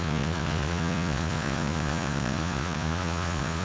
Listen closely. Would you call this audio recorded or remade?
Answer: remade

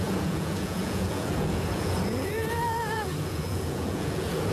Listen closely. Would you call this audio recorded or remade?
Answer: remade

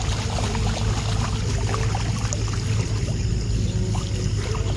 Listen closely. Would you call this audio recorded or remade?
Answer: recorded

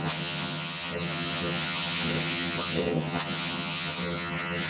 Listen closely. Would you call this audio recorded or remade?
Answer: remade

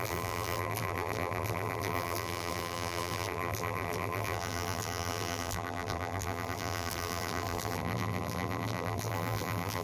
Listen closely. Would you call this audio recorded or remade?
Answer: remade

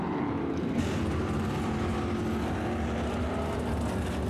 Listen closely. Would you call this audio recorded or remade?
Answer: recorded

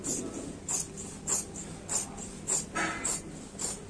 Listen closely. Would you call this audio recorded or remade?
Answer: recorded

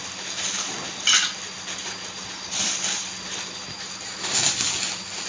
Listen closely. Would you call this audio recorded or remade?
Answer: recorded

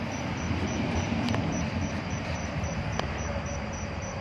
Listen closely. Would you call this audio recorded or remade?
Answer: remade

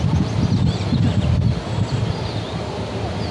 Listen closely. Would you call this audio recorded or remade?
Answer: recorded